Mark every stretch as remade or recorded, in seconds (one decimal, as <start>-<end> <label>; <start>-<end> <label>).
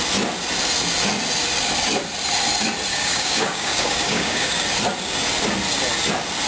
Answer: 0.0-2.9 recorded; 2.9-4.6 remade; 4.6-6.5 recorded